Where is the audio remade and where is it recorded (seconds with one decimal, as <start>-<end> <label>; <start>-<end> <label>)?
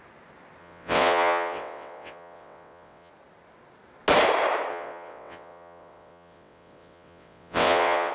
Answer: 0.0-0.6 recorded; 0.6-3.1 remade; 3.1-4.7 recorded; 4.7-8.1 remade